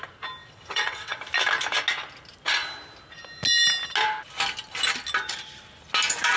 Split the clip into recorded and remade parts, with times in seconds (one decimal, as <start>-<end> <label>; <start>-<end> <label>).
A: 0.0-0.4 recorded; 0.4-1.2 remade; 1.2-6.4 recorded